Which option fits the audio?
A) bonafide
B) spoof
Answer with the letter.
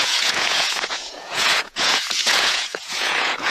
B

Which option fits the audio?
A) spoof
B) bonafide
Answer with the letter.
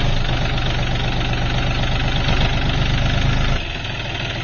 B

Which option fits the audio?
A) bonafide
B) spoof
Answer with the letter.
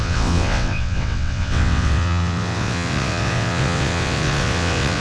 B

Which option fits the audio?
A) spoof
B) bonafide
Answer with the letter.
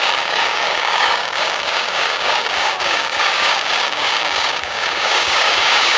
A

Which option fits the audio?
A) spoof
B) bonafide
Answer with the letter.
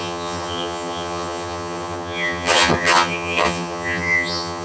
A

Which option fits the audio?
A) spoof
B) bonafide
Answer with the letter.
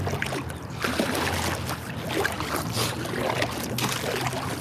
B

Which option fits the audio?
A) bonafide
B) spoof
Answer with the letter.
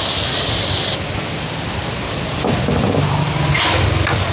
A